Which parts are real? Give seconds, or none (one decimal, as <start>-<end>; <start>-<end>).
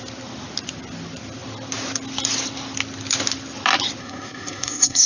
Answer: 0.0-4.0